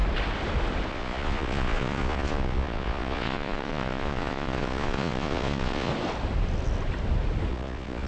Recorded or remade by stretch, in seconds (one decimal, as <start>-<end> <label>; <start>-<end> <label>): 0.0-0.9 recorded; 0.9-5.9 remade; 5.9-7.5 recorded; 7.5-8.1 remade